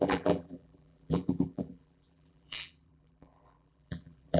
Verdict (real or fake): fake